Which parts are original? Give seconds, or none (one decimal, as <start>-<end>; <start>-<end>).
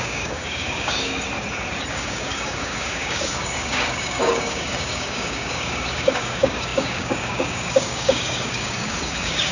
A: 1.1-1.9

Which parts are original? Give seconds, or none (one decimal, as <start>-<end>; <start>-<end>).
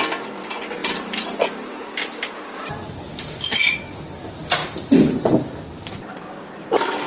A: 0.0-7.1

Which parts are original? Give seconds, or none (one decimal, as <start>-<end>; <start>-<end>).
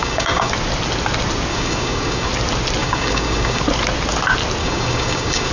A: 0.5-1.5; 2.3-2.8; 3.6-4.6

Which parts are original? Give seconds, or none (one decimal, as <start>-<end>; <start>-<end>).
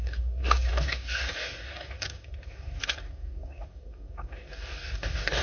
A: none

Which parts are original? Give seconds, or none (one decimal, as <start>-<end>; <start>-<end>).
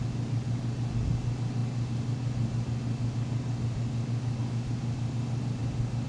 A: 0.0-6.1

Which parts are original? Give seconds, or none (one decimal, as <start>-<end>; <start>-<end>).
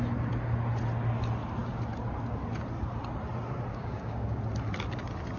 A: 0.0-3.7; 4.4-5.4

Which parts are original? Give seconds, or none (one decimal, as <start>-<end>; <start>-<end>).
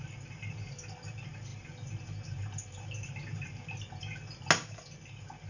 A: 0.0-5.5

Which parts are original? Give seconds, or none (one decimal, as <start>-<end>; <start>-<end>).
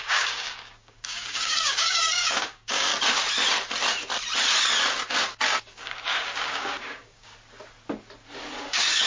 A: 2.9-5.7; 7.3-8.5